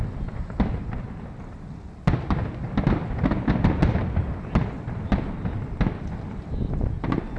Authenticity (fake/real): real